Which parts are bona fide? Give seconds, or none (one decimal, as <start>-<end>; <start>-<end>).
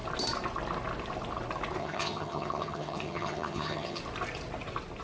0.0-1.8; 4.0-5.0